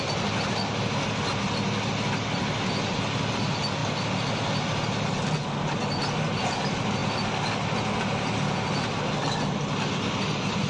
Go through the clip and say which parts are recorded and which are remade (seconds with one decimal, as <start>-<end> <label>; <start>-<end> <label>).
0.0-10.7 recorded